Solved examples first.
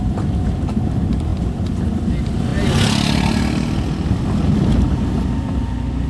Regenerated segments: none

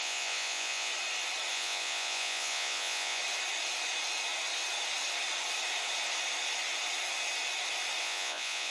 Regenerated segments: 0.0-0.9 (vocoder, Vocos); 1.5-3.2; 8.0-8.7

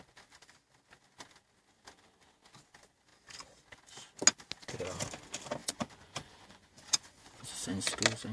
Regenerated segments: 5.6-7.5 (vocoder, Vocos)

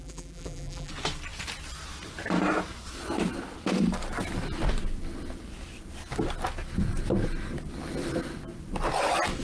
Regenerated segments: 0.0-0.9 (vocoder, BigVGAN v2)

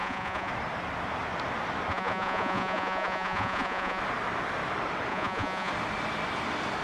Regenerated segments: 0.0-0.5 (vocoder, Vocos); 1.9-4.0; 5.1-5.7

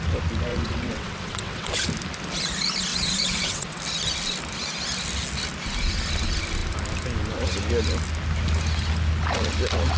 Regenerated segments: 0.5-1.7 (vocoder, WaveNeXt); 2.9-3.8

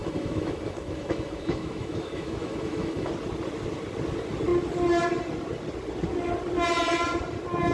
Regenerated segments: 0.0-3.1 (autoencoder, DAC-VAE)